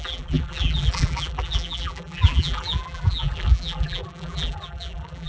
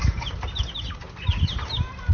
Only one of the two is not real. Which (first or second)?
first